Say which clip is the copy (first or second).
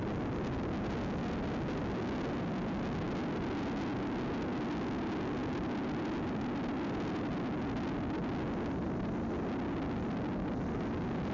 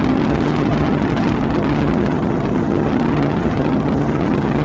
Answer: second